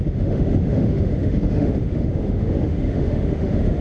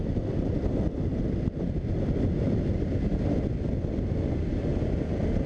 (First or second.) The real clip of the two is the second